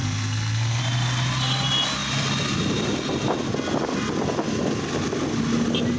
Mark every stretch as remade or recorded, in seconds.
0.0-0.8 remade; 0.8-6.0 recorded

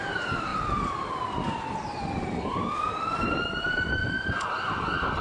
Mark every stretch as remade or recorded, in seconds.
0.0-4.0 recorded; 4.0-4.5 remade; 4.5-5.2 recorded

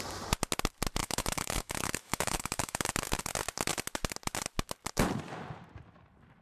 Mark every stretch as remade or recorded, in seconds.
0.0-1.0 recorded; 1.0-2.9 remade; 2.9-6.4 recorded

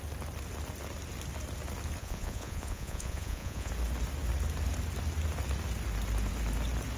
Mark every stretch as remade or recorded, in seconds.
0.0-2.0 recorded; 2.0-3.7 remade; 3.7-7.0 recorded